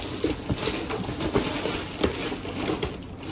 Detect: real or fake real